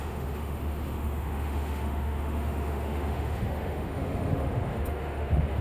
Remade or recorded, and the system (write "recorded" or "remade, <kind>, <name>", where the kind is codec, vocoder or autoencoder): remade, autoencoder, DAC-VAE